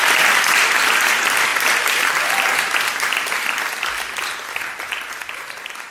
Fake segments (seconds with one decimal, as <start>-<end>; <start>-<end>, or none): none